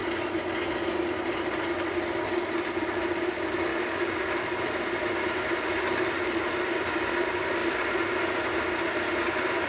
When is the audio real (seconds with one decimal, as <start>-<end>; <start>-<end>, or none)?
0.0-1.3; 3.7-4.4

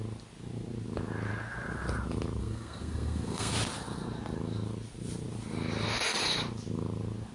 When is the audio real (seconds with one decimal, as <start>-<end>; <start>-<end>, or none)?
0.0-2.4; 3.5-7.3

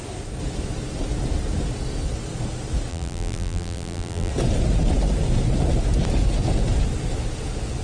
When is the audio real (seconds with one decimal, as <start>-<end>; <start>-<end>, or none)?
0.0-2.9; 4.3-7.8

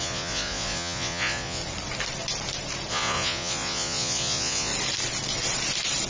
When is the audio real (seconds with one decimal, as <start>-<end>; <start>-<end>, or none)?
1.6-2.9; 4.7-6.1

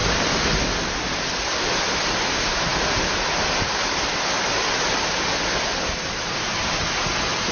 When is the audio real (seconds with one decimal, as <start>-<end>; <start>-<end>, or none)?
0.0-7.5

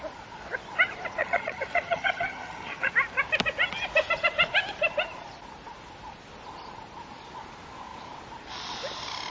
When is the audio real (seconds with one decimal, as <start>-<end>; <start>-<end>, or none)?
0.0-1.2; 2.9-9.3